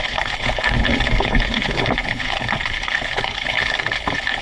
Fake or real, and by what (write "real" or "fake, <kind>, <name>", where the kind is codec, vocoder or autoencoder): fake, codec, HILCodec